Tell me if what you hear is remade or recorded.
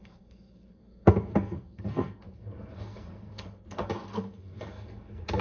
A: remade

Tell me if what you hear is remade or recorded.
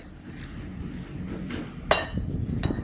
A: recorded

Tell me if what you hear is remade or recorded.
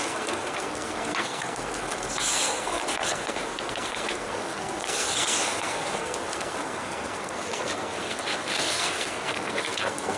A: remade